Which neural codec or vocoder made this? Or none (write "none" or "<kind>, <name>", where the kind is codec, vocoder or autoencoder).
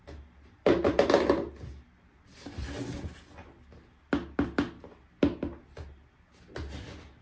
none